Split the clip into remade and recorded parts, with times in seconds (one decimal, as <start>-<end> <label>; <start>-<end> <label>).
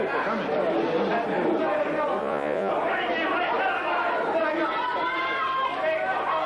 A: 0.0-2.2 recorded; 2.2-2.7 remade; 2.7-6.5 recorded